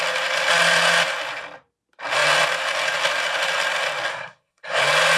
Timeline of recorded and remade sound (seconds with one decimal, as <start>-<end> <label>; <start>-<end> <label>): 0.0-4.1 recorded; 4.1-4.8 remade; 4.8-5.2 recorded